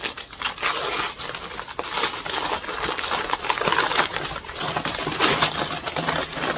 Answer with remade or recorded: recorded